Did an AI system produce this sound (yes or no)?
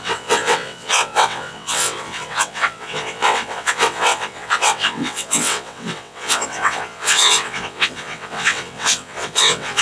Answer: yes